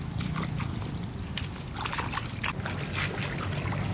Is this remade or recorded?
recorded